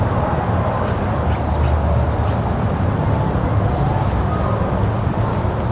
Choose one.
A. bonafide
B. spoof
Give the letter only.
A